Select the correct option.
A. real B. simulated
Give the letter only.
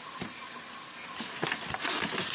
A